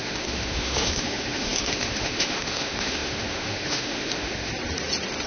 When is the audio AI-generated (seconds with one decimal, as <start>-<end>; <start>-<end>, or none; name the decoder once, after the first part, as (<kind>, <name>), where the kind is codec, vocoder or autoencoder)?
0.0-4.5 (autoencoder, DAC-VAE)